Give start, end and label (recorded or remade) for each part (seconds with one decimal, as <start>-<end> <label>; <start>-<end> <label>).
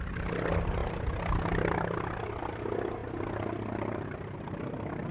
0.0-5.1 recorded